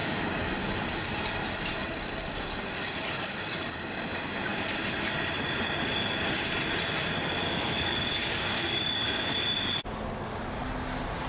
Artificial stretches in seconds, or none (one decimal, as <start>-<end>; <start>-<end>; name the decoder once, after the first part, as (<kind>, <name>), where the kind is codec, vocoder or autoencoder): 0.0-0.8 (codec, DAC); 1.8-4.0; 7.4-9.3